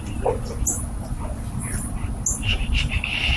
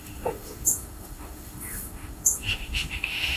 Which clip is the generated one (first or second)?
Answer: second